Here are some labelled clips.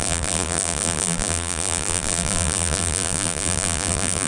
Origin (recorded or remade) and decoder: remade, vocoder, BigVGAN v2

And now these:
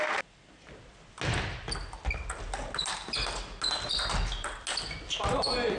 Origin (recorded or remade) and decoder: recorded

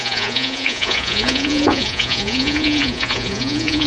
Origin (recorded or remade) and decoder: remade, vocoder, Vocos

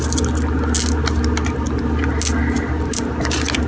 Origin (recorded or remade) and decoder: recorded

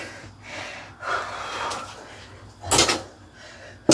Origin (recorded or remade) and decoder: recorded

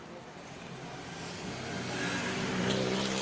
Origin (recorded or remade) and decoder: recorded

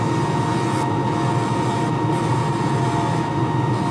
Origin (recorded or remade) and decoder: recorded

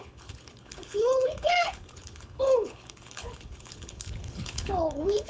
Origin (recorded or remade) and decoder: remade, codec, HILCodec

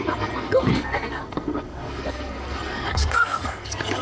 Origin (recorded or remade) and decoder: remade, codec, SNAC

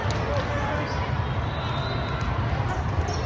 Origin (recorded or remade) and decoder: recorded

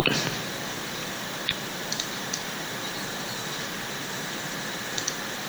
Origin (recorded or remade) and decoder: remade, vocoder, BigVGAN v2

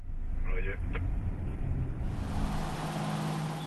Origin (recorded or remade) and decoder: recorded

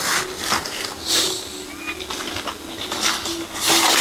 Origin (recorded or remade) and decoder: recorded